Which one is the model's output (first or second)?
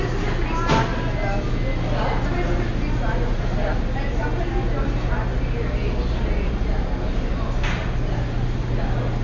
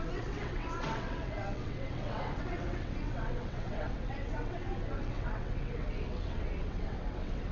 second